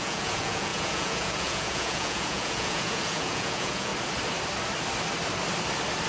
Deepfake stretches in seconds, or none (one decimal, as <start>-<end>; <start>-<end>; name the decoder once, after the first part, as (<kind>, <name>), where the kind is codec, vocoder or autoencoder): 0.0-3.9 (vocoder, Vocos)